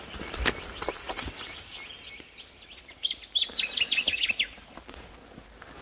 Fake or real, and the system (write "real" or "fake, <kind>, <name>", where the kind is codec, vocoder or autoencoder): real